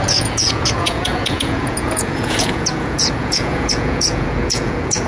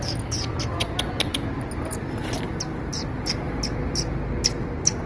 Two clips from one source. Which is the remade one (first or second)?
first